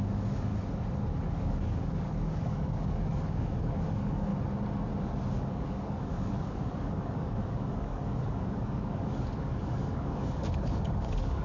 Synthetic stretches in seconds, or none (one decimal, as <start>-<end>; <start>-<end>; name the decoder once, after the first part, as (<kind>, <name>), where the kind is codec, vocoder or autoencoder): 0.0-0.5 (codec, DAC); 1.2-4.3; 5.3-11.4